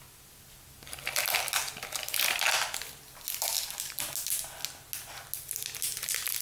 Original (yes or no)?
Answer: yes